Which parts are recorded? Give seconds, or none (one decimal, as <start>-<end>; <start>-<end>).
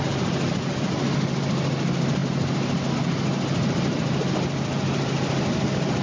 0.0-6.0